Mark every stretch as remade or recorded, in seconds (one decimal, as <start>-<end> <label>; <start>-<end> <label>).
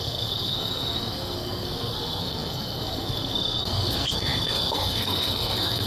0.0-5.9 remade